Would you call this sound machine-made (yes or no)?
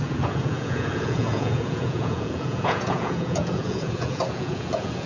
yes